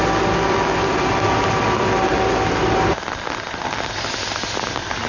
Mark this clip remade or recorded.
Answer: recorded